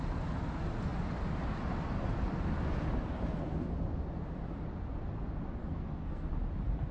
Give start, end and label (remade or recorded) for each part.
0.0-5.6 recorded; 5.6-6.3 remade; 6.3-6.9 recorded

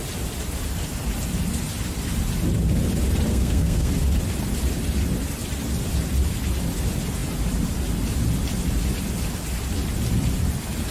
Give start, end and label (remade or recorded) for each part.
0.0-3.3 recorded; 3.3-3.9 remade; 3.9-10.9 recorded

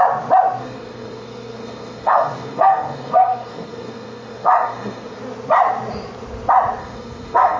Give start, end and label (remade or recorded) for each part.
0.0-0.6 recorded; 0.6-5.2 remade; 5.2-6.8 recorded; 6.8-7.6 remade